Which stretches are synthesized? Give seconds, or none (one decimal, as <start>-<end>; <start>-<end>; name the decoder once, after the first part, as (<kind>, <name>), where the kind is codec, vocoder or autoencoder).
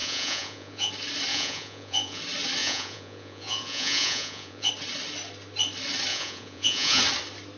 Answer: 0.0-0.9 (vocoder, Vocos); 1.3-2.2; 2.6-4.7; 6.1-7.0